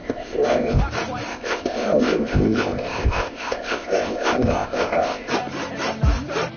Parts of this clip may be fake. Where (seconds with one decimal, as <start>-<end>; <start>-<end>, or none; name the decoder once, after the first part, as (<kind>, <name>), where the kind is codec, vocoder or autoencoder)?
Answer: 0.0-0.8 (codec, ZipCodec); 1.3-5.3